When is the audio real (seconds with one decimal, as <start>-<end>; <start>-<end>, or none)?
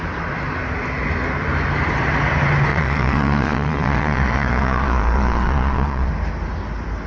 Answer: 0.0-2.7; 6.1-7.1